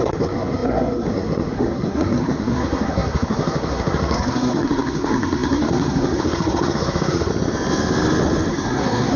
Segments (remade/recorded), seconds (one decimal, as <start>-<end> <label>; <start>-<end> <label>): 0.0-7.3 remade; 7.3-8.5 recorded; 8.5-9.2 remade

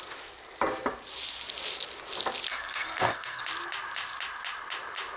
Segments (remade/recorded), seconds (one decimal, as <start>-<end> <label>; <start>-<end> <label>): 0.0-2.5 recorded; 2.5-3.4 remade; 3.4-5.2 recorded

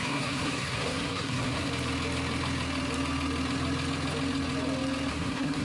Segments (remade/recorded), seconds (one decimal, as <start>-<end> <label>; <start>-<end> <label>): 0.0-1.7 remade; 1.7-5.1 recorded; 5.1-5.6 remade

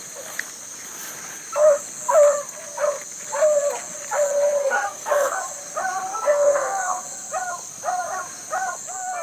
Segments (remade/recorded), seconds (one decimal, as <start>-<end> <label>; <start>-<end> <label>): 0.0-4.6 recorded; 4.6-5.4 remade; 5.4-6.1 recorded; 6.1-7.0 remade; 7.0-9.2 recorded

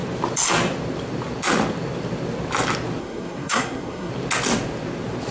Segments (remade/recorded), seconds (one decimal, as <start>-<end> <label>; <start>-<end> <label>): 0.0-3.0 recorded; 3.0-4.1 remade; 4.1-5.3 recorded

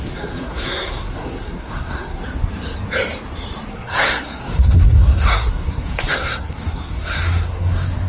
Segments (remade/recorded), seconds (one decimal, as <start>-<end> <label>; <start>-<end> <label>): 0.0-2.2 remade; 2.2-3.7 recorded; 3.7-8.1 remade

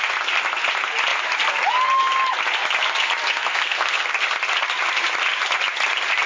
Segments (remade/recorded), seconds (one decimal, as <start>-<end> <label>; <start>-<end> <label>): 0.0-3.4 recorded; 3.4-4.1 remade; 4.1-6.3 recorded